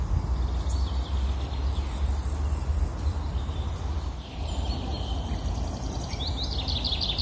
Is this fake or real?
real